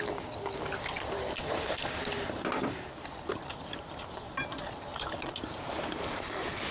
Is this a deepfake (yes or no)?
no